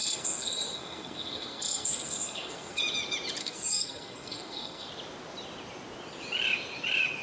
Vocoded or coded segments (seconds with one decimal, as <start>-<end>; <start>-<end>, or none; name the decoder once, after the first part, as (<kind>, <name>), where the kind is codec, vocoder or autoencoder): 0.0-2.8 (codec, SNAC); 3.4-4.9